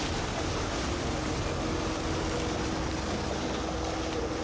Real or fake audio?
real